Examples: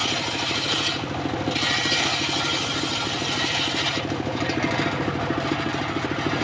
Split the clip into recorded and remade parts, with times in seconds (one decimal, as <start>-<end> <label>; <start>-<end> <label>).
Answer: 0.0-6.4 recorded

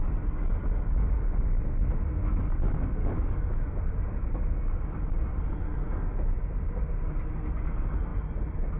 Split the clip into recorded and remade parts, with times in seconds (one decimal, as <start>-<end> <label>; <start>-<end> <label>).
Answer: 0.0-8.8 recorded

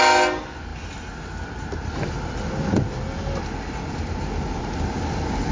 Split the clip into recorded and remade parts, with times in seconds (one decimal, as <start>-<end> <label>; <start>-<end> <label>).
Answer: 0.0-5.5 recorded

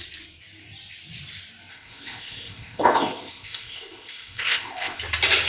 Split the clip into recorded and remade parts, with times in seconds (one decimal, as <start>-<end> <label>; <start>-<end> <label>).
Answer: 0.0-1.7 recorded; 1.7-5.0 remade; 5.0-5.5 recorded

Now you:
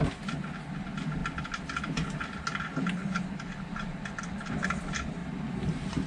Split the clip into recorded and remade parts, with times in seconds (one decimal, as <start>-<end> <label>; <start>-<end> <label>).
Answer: 0.0-5.2 recorded; 5.2-6.1 remade

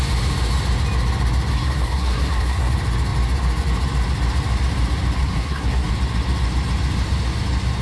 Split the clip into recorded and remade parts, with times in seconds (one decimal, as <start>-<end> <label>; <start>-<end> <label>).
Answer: 0.0-1.5 recorded; 1.5-2.7 remade; 2.7-5.2 recorded; 5.2-5.9 remade; 5.9-7.8 recorded

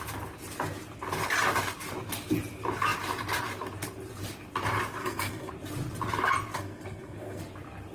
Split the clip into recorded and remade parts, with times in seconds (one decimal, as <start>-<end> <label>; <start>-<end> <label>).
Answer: 0.0-5.0 recorded; 5.0-5.5 remade; 5.5-6.5 recorded; 6.5-7.4 remade; 7.4-7.9 recorded